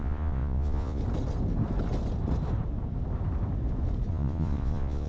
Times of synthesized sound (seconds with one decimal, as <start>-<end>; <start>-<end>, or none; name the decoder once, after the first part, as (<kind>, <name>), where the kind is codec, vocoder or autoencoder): 0.0-1.0 (vocoder, Vocos); 4.1-5.1